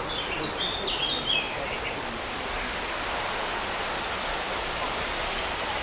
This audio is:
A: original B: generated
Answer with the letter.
A